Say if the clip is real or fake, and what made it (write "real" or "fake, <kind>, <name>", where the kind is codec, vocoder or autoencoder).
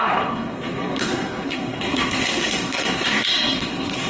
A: fake, codec, SNAC